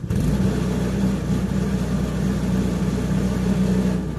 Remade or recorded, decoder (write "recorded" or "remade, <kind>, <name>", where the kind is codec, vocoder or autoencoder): recorded